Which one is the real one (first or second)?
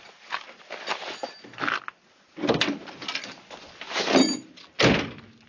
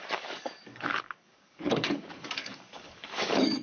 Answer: first